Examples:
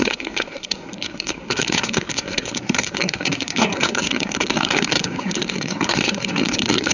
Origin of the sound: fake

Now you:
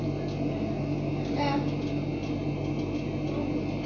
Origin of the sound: real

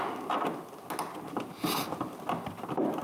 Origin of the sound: real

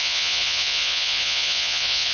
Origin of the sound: fake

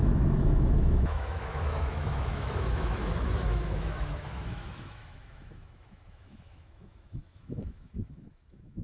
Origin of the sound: fake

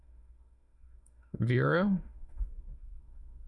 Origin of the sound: fake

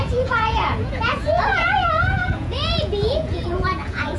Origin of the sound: fake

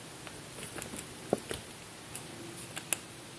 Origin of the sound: real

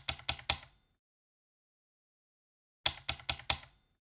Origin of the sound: real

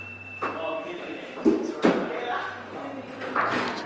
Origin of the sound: real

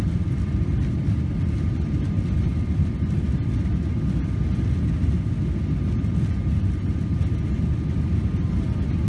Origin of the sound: real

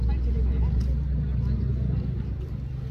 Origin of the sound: real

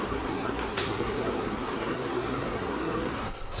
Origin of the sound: fake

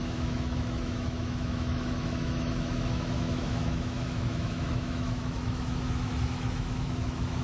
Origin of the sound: fake